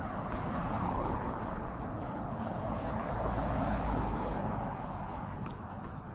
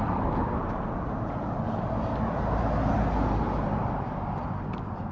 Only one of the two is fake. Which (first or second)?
first